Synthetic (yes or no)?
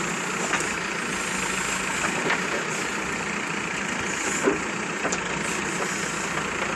no